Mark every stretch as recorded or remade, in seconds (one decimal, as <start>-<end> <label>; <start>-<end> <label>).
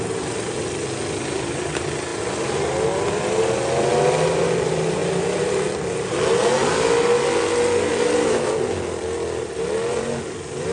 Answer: 0.0-10.7 recorded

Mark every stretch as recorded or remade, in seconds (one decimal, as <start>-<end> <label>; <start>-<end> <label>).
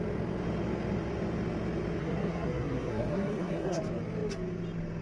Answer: 0.0-2.0 recorded; 2.0-3.8 remade; 3.8-5.0 recorded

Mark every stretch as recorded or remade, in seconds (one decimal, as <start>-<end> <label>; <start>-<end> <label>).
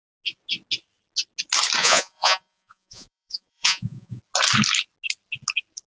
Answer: 0.0-1.8 recorded; 1.8-4.2 remade; 4.2-5.9 recorded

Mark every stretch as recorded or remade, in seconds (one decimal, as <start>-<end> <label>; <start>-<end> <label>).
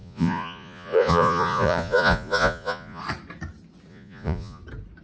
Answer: 0.0-3.0 remade; 3.0-3.9 recorded; 3.9-4.6 remade; 4.6-5.0 recorded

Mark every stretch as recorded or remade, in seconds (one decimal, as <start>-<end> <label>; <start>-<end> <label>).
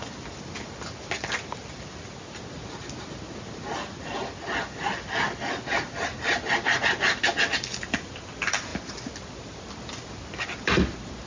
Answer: 0.0-11.3 recorded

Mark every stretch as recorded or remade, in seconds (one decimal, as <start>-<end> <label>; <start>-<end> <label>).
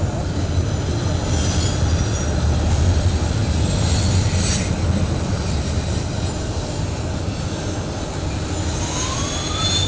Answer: 0.0-9.9 recorded